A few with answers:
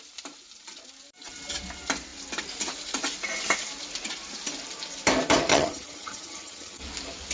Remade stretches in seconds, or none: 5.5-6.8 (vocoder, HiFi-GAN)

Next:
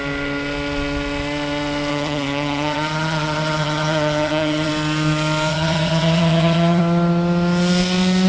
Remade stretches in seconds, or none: 1.9-4.7 (vocoder, HiFi-GAN); 5.5-6.8

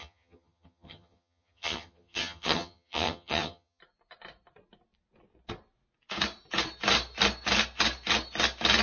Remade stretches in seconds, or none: 0.0-3.8 (vocoder, HiFi-GAN)